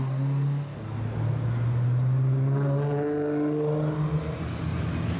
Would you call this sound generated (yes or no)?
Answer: no